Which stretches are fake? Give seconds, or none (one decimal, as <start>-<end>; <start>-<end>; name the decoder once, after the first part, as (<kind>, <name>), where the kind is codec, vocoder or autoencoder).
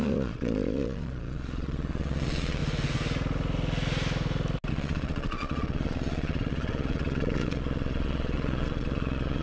0.0-2.6 (vocoder, Vocos); 4.7-9.4